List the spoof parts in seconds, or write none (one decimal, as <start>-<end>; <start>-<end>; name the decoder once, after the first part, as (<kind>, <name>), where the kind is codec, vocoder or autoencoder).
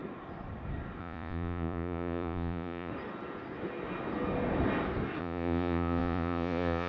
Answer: 1.0-2.9 (vocoder, Vocos); 5.2-6.9